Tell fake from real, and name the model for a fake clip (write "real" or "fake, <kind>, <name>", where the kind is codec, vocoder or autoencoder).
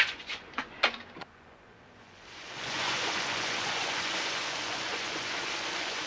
fake, vocoder, Vocos